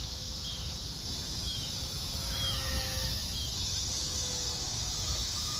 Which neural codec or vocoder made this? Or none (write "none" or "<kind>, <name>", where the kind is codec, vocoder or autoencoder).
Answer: autoencoder, DAC-VAE